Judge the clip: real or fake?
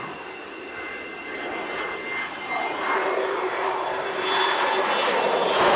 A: real